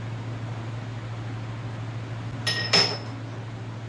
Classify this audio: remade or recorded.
recorded